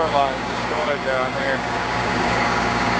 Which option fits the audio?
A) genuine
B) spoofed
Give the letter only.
B